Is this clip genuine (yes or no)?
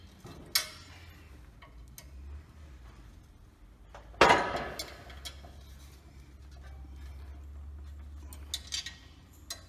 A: yes